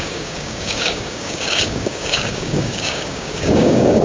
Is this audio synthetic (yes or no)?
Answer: yes